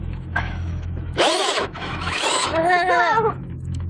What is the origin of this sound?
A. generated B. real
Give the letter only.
A